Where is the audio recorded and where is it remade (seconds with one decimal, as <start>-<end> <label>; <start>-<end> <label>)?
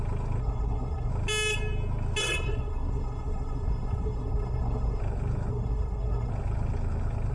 0.0-0.4 recorded; 0.4-1.1 remade; 1.1-2.2 recorded; 2.2-5.0 remade; 5.0-5.5 recorded; 5.5-6.3 remade; 6.3-7.3 recorded